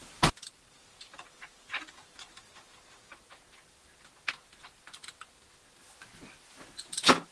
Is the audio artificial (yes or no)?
no